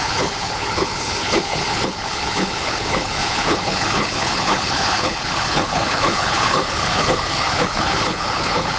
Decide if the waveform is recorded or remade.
remade